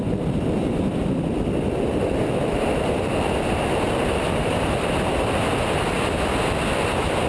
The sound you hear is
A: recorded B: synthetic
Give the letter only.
A